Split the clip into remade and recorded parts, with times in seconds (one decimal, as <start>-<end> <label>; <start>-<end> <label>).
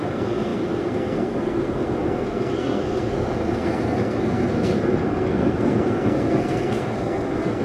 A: 0.0-7.6 remade